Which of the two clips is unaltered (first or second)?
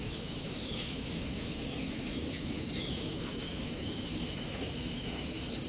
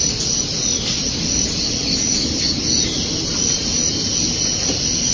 second